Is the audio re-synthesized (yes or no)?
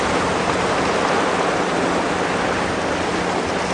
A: no